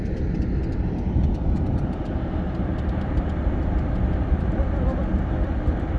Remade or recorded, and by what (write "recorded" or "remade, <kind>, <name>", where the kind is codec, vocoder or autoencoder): recorded